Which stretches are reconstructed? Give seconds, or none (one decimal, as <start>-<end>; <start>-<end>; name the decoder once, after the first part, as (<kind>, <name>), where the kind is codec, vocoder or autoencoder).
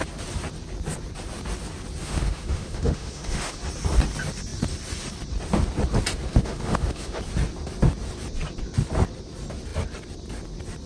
2.0-3.6 (autoencoder, DAC-VAE); 6.3-7.2